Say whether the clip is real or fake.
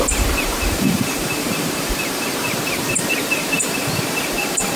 fake